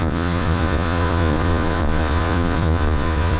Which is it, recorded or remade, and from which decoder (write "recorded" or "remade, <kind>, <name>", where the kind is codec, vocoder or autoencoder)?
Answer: remade, vocoder, Vocos